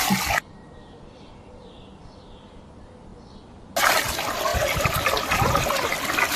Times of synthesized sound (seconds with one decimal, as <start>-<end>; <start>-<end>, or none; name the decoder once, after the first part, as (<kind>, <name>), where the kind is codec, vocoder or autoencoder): 0.0-3.1 (vocoder, BigVGAN v2); 3.9-6.4